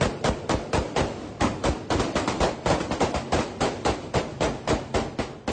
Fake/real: real